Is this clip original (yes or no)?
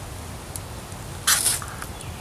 yes